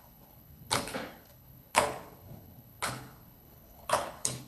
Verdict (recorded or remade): remade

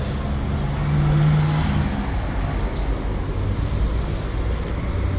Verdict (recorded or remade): recorded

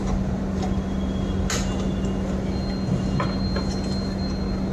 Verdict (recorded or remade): recorded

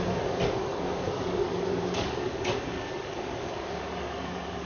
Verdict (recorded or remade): remade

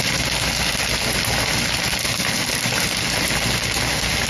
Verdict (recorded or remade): recorded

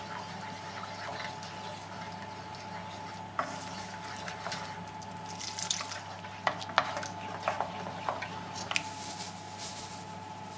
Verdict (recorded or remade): recorded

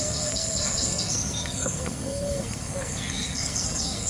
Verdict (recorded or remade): remade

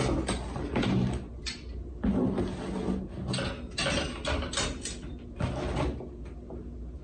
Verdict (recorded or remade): recorded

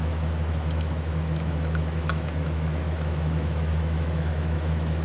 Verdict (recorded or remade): remade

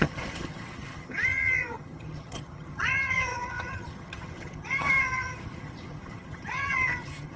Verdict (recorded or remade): remade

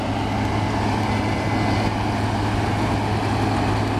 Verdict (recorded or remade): recorded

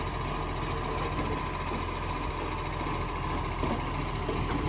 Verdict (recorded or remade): recorded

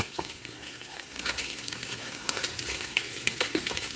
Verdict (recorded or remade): remade